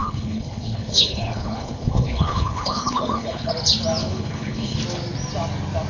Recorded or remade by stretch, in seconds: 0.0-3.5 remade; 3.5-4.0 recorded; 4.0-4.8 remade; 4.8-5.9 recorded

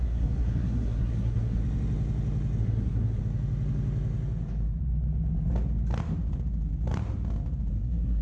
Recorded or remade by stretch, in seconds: 0.0-1.6 remade; 1.6-2.6 recorded; 2.6-3.2 remade; 3.2-7.7 recorded; 7.7-8.2 remade

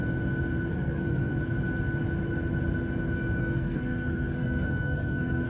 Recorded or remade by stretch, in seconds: 0.0-0.7 recorded; 0.7-1.3 remade; 1.3-3.4 recorded; 3.4-5.5 remade

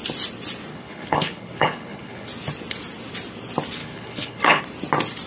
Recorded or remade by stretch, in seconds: 0.0-0.7 recorded; 0.7-2.3 remade; 2.3-3.8 recorded; 3.8-4.6 remade; 4.6-5.3 recorded

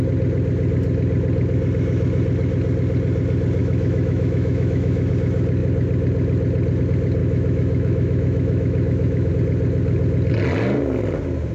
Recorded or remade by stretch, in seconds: 0.0-3.6 recorded; 3.6-5.1 remade; 5.1-7.2 recorded; 7.2-9.3 remade; 9.3-11.5 recorded

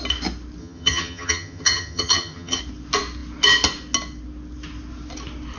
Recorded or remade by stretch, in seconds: 0.0-0.6 recorded; 0.6-2.6 remade; 2.6-5.6 recorded

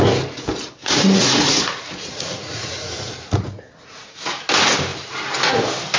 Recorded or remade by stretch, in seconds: 0.0-0.8 recorded; 0.8-4.4 remade; 4.4-6.0 recorded